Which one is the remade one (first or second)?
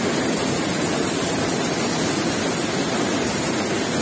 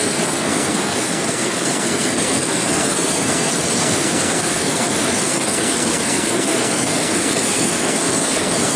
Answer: second